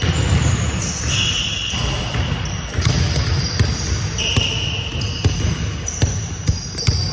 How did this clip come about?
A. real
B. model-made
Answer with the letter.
A